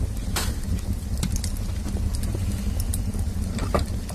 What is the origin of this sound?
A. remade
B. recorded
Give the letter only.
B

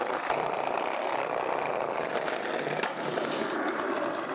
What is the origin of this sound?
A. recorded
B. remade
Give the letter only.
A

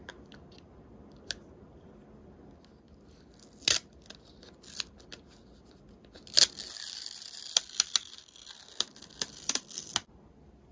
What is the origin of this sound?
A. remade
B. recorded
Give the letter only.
B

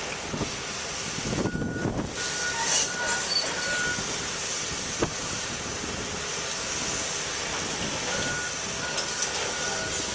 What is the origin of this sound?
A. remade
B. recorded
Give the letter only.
B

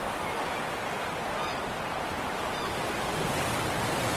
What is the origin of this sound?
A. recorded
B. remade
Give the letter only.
A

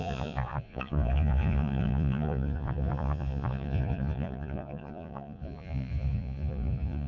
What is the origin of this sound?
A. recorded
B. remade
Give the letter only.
B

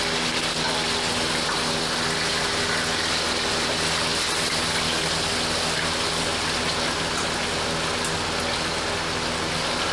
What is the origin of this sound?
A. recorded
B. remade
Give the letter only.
A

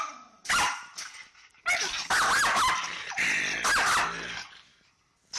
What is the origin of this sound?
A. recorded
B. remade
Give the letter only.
A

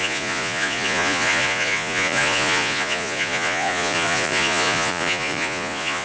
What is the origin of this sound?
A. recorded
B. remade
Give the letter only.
B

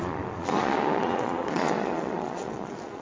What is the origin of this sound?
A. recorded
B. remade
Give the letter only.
B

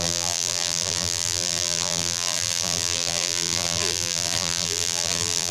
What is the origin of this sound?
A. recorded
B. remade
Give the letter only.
B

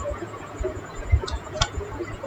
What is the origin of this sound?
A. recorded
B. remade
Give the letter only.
B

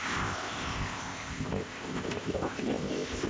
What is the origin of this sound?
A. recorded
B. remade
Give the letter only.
B